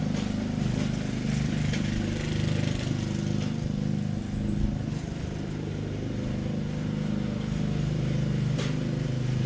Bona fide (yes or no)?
yes